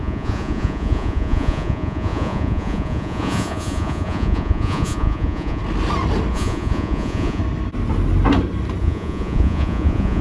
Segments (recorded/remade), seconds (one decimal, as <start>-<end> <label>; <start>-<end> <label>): 0.0-5.6 remade; 5.6-6.3 recorded; 6.3-7.4 remade; 7.4-8.8 recorded; 8.8-10.2 remade